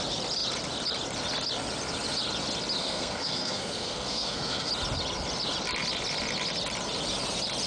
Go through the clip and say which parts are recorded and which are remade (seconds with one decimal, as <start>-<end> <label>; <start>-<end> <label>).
0.0-2.8 recorded; 2.8-4.7 remade; 4.7-7.7 recorded

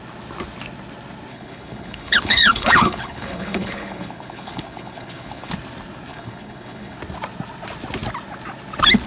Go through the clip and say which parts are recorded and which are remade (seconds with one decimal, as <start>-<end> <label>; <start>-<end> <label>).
0.0-1.3 recorded; 1.3-5.5 remade; 5.5-6.1 recorded; 6.1-7.0 remade; 7.0-9.1 recorded

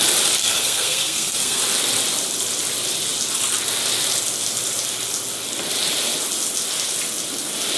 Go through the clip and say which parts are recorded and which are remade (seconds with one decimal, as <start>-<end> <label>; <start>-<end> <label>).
0.0-0.4 recorded; 0.4-1.6 remade; 1.6-7.8 recorded

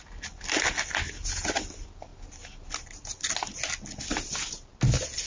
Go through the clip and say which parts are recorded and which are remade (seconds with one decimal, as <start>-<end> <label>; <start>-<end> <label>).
0.0-5.3 recorded

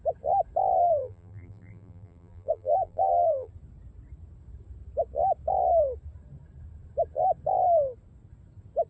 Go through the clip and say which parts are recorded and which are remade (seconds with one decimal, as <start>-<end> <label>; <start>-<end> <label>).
0.0-0.8 recorded; 0.8-3.5 remade; 3.5-8.9 recorded